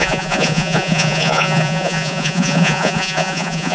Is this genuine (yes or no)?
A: no